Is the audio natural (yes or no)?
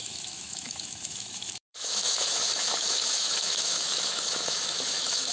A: no